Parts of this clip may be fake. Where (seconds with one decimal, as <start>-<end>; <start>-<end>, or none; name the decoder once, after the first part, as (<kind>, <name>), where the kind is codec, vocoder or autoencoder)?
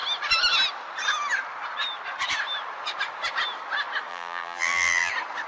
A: 4.1-5.1 (vocoder, BigVGAN v2)